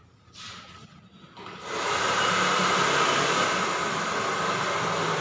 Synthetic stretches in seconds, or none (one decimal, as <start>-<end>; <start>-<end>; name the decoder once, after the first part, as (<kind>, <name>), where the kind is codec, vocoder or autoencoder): none